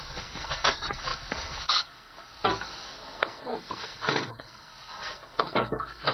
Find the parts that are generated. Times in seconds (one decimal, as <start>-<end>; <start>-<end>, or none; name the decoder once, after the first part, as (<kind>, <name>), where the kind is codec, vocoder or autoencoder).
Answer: 0.0-6.1 (codec, SNAC)